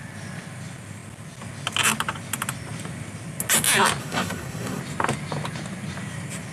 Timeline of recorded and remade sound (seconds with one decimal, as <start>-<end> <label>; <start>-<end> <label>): 0.0-4.0 recorded; 4.0-4.8 remade; 4.8-6.5 recorded